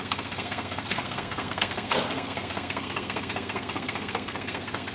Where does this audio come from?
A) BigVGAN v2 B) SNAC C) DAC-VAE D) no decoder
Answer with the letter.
B